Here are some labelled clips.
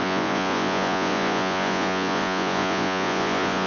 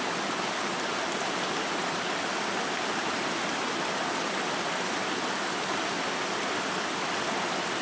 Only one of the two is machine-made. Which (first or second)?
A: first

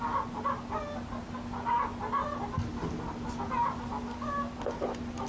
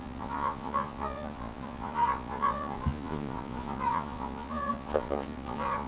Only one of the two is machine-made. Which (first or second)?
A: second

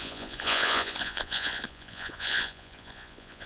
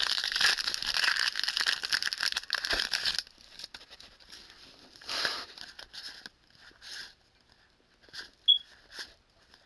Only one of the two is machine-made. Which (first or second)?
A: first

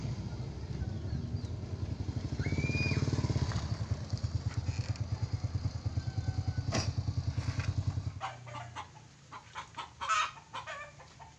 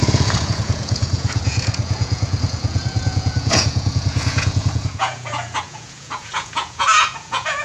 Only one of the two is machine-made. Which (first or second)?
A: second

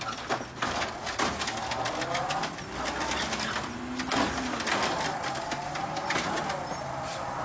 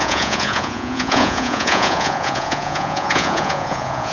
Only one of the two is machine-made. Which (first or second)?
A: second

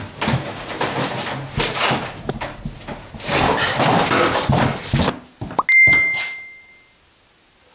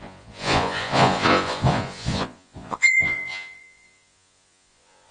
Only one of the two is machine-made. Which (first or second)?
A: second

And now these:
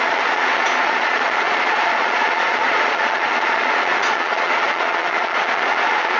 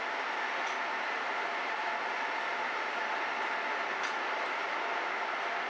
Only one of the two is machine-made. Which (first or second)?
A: first